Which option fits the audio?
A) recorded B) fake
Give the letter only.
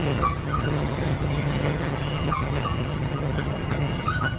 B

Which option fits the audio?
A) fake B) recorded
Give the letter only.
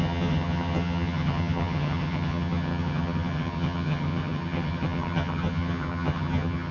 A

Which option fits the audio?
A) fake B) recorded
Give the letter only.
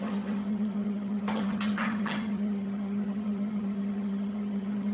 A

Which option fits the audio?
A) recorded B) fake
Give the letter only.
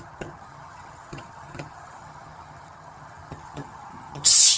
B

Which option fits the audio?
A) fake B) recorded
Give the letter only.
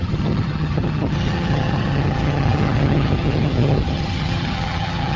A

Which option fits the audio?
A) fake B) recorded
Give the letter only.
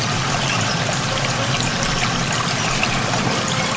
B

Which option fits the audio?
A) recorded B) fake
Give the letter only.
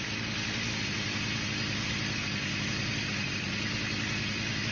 A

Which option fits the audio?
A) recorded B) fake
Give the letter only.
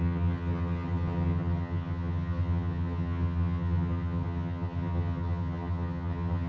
B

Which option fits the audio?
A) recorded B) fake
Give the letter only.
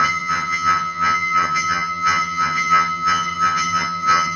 B